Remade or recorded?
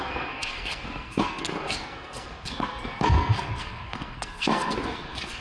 remade